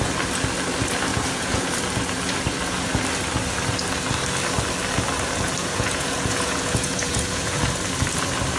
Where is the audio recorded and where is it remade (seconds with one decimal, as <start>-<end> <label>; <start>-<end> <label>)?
0.0-1.1 recorded; 1.1-1.7 remade; 1.7-5.6 recorded; 5.6-7.7 remade; 7.7-8.6 recorded